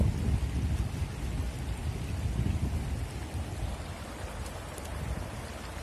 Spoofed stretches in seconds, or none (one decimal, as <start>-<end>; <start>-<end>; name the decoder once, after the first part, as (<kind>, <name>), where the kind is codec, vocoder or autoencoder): none